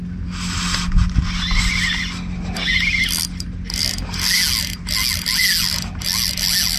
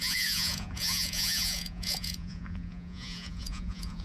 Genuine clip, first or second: first